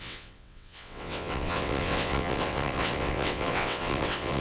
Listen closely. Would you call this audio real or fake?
fake